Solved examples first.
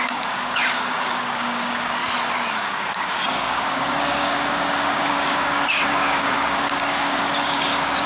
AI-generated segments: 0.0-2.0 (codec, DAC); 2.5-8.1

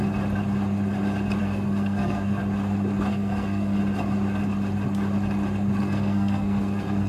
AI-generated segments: 1.4-2.4 (codec, SNAC); 3.1-3.8; 5.8-7.1